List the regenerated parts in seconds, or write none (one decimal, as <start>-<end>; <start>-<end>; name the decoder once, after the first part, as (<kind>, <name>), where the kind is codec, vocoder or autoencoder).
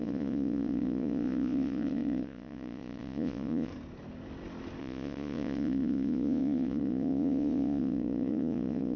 0.0-3.7 (vocoder, Vocos); 4.8-9.0